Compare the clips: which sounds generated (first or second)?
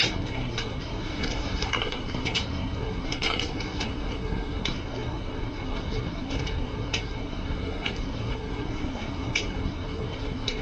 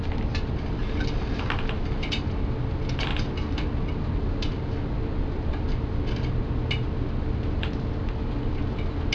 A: first